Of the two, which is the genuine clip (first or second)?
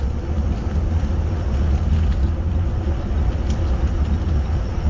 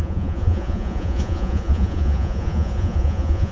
first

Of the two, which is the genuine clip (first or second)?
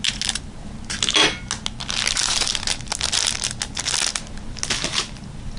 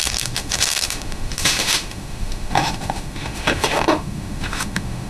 first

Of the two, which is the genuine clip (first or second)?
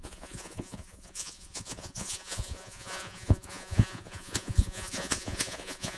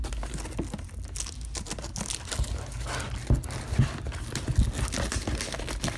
second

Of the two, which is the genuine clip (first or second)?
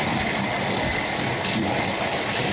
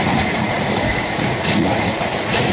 first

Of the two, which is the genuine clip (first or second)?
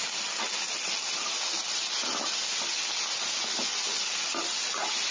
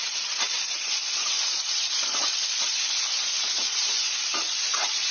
first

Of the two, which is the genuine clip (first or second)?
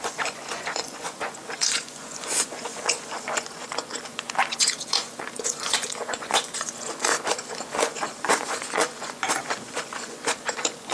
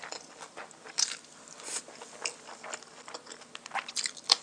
second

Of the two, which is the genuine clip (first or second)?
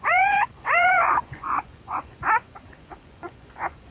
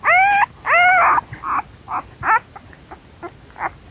second